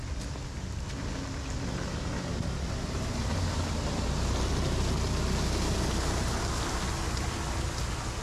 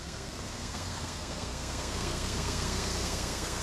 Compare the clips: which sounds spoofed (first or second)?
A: second